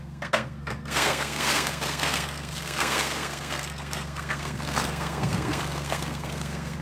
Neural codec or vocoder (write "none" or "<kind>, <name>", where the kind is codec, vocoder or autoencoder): codec, SNAC